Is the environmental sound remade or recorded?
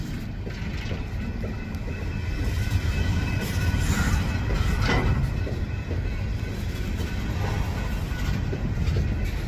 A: recorded